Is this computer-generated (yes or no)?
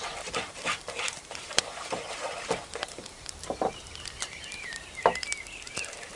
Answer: yes